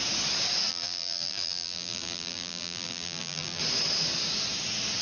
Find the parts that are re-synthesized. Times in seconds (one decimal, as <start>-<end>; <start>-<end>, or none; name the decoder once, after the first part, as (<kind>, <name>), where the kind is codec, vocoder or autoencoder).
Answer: 0.7-3.6 (vocoder, BigVGAN v2)